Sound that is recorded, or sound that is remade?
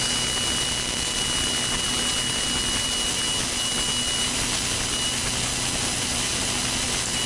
recorded